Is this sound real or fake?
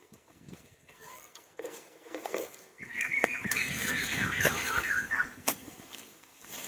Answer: fake